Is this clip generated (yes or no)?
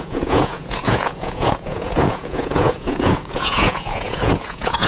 yes